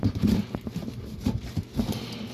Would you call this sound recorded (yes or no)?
yes